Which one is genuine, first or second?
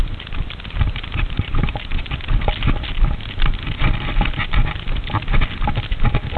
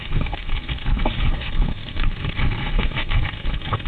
first